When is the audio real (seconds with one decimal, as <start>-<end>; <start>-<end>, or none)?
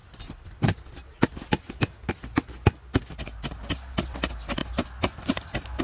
2.1-4.6